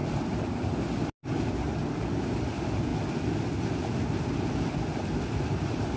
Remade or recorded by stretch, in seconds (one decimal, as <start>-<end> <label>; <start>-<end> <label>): 0.0-6.0 recorded